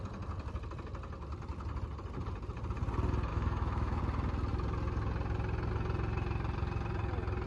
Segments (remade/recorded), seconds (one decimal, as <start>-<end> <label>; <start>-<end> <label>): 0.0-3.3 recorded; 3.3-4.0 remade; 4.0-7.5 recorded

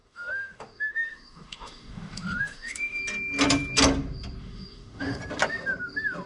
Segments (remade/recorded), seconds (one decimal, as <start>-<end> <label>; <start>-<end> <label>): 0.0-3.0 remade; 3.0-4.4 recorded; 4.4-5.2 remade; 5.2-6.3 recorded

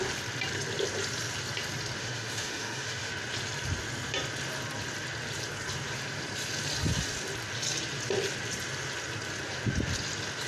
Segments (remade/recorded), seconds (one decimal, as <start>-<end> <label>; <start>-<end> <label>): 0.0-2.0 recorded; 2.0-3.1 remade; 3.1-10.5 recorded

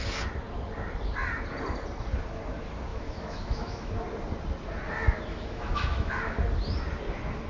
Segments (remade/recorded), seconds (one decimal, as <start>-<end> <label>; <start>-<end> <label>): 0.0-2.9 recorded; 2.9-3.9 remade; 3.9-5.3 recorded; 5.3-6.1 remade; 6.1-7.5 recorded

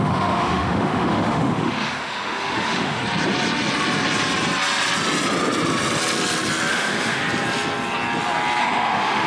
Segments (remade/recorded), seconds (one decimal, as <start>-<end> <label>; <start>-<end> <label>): 0.0-3.0 remade; 3.0-6.7 recorded; 6.7-7.2 remade; 7.2-8.6 recorded; 8.6-9.3 remade